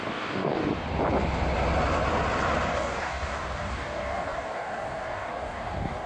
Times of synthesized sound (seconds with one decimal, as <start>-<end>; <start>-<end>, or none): 0.0-0.7; 2.7-6.1